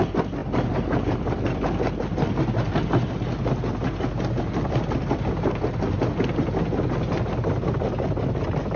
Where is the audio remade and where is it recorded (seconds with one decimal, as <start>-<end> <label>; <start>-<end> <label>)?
0.0-8.8 recorded